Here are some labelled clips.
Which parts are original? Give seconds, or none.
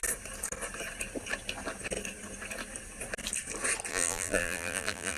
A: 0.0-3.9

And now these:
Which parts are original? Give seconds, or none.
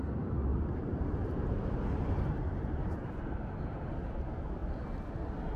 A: 0.0-0.5; 3.9-5.6